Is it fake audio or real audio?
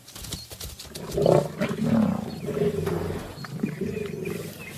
real